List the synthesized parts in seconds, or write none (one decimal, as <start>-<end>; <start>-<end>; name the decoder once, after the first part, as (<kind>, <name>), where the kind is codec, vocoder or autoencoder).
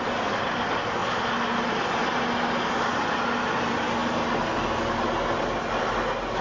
none